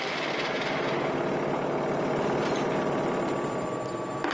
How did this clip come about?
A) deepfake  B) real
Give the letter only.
B